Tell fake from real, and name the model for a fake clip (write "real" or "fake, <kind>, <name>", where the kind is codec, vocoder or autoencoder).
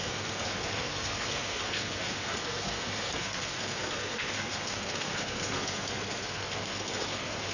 fake, codec, SNAC